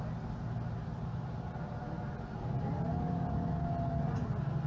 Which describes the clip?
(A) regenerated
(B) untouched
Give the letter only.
B